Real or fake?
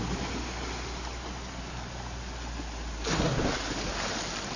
real